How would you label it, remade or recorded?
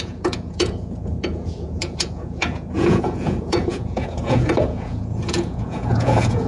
remade